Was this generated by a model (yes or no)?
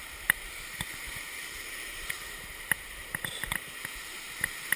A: yes